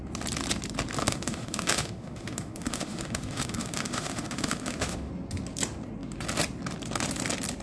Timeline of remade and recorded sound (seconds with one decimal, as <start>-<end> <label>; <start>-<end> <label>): 0.0-1.0 recorded; 1.0-5.1 remade; 5.1-7.6 recorded